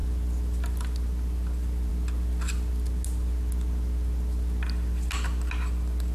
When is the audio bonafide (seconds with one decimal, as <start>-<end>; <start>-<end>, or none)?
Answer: 0.0-6.1